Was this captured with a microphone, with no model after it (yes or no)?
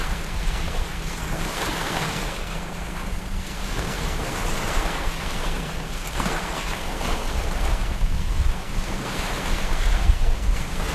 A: no